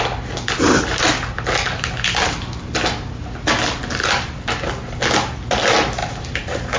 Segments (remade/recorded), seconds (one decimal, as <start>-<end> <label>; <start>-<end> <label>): 0.0-6.0 recorded; 6.0-6.8 remade

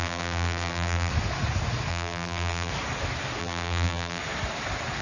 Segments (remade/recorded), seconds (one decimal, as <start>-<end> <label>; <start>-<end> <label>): 0.0-1.1 remade; 1.1-1.9 recorded; 1.9-2.7 remade; 2.7-3.4 recorded; 3.4-4.2 remade; 4.2-5.0 recorded

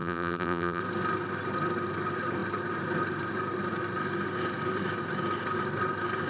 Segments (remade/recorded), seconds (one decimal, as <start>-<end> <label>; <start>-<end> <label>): 0.0-0.8 remade; 0.8-6.3 recorded

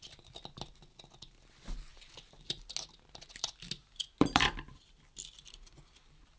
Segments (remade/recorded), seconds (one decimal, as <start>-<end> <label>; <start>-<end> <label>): 0.0-1.9 recorded; 1.9-2.7 remade; 2.7-3.8 recorded; 3.8-6.4 remade

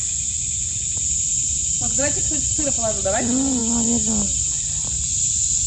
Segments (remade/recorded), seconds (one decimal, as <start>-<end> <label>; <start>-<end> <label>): 0.0-1.4 recorded; 1.4-2.6 remade; 2.6-5.7 recorded

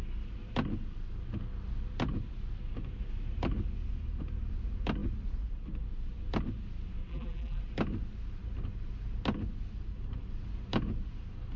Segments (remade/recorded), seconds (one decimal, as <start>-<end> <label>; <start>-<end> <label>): 0.0-7.1 recorded; 7.1-7.6 remade; 7.6-11.6 recorded

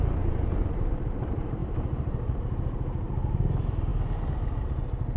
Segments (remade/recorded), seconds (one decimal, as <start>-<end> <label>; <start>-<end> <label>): 0.0-3.9 remade; 3.9-4.6 recorded; 4.6-5.2 remade